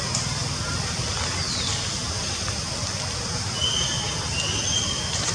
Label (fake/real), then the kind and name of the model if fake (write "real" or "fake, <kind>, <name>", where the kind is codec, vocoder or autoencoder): real